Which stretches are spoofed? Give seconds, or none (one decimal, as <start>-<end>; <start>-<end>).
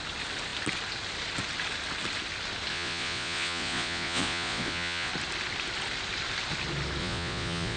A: 2.7-5.1; 7.0-7.8